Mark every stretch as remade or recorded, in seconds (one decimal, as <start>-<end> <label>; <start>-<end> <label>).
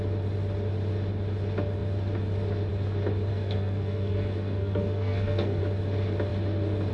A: 0.0-3.3 recorded; 3.3-5.6 remade; 5.6-6.9 recorded